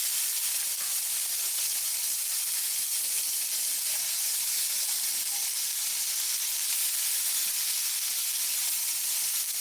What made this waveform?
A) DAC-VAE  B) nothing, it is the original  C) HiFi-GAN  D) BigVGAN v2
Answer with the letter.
B